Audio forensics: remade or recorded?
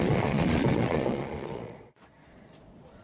remade